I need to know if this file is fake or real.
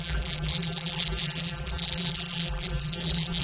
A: fake